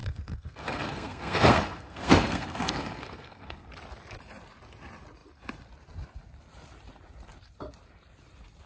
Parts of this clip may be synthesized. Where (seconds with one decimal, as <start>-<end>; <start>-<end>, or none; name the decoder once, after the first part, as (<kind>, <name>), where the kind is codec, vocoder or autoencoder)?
0.0-3.7 (codec, SNAC)